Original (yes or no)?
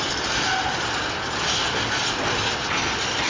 yes